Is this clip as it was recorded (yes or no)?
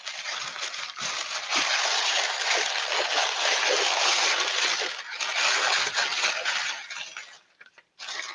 yes